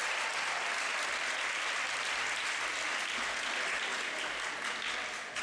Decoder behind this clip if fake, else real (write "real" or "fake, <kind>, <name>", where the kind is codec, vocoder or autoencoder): real